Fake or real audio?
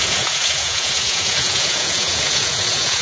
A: fake